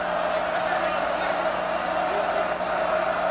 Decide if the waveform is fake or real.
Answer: real